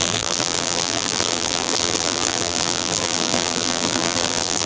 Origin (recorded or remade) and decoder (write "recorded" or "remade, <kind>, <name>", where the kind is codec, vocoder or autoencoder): remade, vocoder, BigVGAN v2